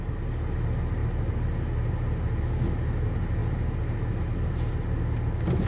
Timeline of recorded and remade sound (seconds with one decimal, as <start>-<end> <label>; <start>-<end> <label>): 0.0-5.7 recorded